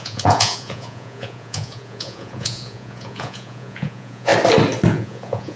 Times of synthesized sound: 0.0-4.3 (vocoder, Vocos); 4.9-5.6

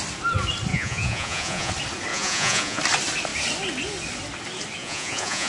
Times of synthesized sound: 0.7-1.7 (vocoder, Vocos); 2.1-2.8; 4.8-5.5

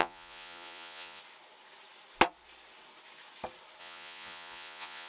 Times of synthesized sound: 0.0-1.2 (vocoder, Vocos); 3.8-5.1